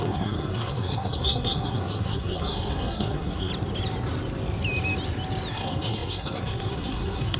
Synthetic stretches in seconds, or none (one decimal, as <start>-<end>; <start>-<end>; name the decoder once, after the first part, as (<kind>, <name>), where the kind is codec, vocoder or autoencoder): 0.0-3.5 (codec, SNAC); 5.5-7.4